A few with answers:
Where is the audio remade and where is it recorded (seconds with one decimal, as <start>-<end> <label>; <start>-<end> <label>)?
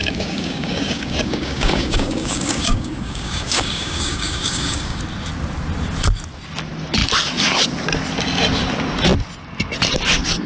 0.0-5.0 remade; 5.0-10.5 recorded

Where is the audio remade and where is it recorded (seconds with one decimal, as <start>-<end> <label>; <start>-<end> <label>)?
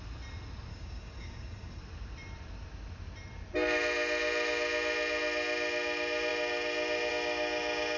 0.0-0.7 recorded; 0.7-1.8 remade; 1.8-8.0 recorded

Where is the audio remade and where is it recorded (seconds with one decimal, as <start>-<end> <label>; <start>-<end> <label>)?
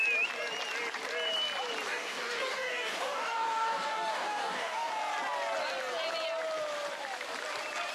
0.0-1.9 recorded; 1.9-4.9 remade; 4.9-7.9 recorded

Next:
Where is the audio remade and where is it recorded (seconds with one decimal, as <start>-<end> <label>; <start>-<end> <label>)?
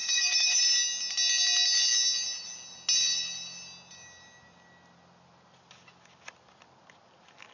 0.0-0.6 remade; 0.6-7.5 recorded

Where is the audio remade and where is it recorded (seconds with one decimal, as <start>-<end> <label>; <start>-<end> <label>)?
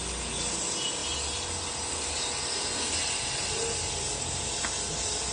0.0-5.3 recorded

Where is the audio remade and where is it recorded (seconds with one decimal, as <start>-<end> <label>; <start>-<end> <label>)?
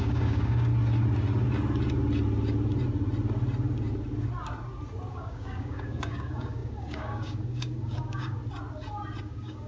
0.0-0.7 remade; 0.7-5.1 recorded; 5.1-8.4 remade; 8.4-9.2 recorded; 9.2-9.7 remade